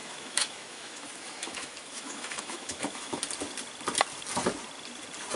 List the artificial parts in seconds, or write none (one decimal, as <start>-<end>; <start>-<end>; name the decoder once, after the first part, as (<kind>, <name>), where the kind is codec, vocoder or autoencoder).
0.0-3.2 (autoencoder, DAC-VAE)